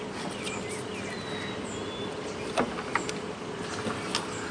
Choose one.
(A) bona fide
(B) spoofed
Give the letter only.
A